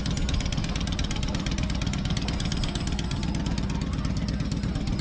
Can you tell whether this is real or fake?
real